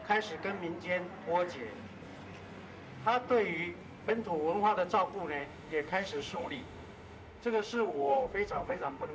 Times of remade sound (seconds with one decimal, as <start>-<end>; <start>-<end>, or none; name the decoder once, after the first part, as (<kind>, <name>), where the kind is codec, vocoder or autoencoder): 5.4-9.1 (autoencoder, DAC-VAE)

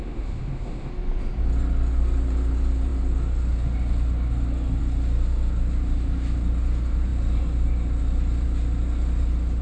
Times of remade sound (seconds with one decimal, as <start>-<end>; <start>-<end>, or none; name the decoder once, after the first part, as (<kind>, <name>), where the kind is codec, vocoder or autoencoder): 0.0-0.9 (autoencoder, DAC-VAE)

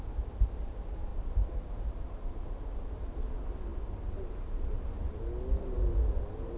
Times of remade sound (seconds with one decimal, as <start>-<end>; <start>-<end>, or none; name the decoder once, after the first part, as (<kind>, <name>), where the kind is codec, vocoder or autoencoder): 1.1-3.2 (vocoder, BigVGAN v2); 3.7-5.2

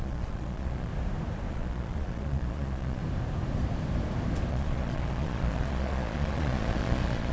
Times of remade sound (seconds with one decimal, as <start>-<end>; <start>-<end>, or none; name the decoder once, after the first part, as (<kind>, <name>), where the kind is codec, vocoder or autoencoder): 0.0-0.9 (vocoder, Vocos); 1.5-3.0; 4.5-7.3

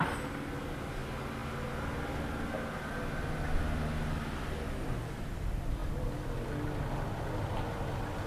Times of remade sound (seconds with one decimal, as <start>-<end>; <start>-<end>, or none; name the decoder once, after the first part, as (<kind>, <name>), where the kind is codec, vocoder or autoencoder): none

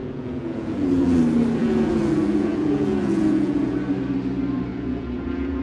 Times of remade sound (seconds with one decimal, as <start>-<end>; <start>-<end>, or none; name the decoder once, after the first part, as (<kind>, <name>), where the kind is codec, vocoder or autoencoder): 0.0-1.2 (vocoder, Vocos); 1.6-3.8; 4.7-5.6

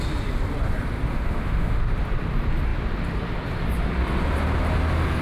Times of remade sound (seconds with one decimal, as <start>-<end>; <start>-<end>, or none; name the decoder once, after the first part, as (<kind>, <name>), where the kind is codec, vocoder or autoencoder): 1.1-1.8 (autoencoder, DAC-VAE)

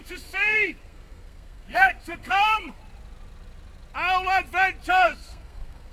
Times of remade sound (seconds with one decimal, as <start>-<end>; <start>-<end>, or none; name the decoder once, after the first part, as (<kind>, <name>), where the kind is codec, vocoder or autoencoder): 0.0-2.8 (codec, SNAC); 4.9-5.9